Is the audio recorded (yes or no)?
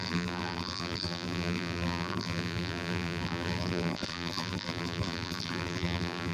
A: no